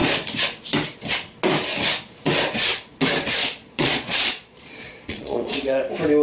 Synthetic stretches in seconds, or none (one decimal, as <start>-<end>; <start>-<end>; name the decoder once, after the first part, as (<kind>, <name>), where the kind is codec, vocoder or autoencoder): 3.4-5.8 (vocoder, Vocos)